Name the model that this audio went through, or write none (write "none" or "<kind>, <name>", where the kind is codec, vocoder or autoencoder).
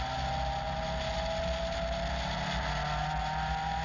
none